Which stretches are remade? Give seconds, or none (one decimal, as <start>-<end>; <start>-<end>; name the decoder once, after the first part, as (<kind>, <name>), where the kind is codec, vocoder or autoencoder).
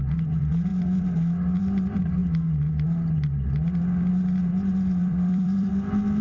5.0-5.7 (vocoder, BigVGAN v2)